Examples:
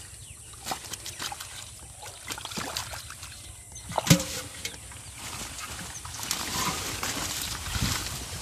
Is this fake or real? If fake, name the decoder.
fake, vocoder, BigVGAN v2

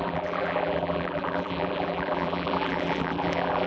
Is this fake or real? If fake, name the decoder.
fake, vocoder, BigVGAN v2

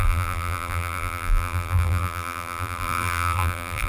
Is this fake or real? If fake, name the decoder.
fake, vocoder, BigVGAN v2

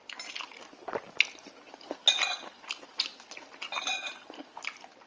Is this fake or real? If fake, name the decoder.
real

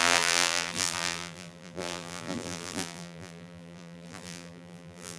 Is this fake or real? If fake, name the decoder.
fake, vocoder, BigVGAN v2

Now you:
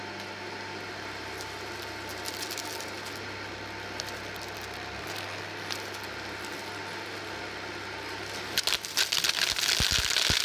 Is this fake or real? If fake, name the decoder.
real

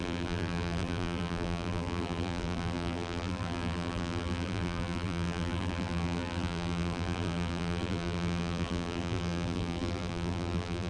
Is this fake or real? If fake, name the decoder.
fake, vocoder, BigVGAN v2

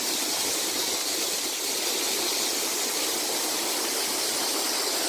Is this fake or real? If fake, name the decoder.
real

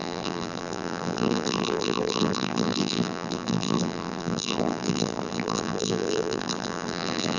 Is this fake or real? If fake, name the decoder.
fake, vocoder, BigVGAN v2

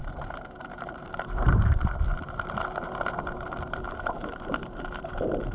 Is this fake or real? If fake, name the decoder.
fake, vocoder, BigVGAN v2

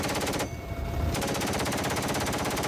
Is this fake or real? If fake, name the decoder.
fake, vocoder, BigVGAN v2